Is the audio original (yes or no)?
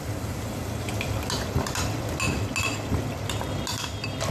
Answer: yes